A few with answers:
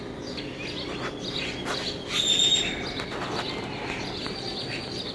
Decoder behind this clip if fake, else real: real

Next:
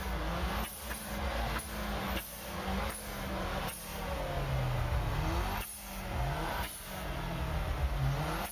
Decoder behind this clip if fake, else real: real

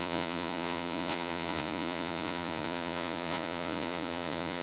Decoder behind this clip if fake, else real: fake, vocoder, Vocos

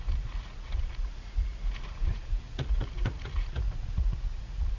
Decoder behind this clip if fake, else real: fake, vocoder, Vocos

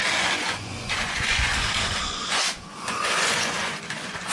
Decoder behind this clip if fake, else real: fake, vocoder, Vocos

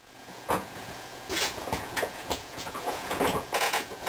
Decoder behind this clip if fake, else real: fake, vocoder, Vocos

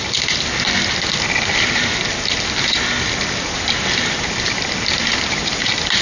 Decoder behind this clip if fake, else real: real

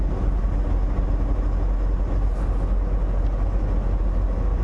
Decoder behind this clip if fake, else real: real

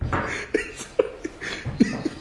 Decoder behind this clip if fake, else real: real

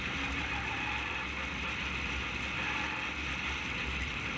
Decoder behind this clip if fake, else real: real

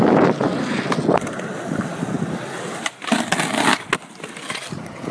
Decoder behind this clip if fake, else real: real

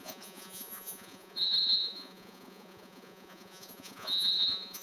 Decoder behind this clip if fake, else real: fake, vocoder, Vocos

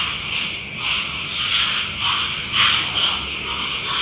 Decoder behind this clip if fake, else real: real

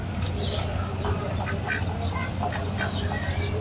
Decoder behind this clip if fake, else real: real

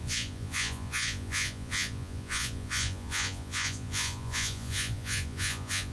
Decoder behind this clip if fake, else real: fake, vocoder, Vocos